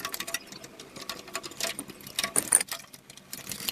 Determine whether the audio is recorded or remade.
recorded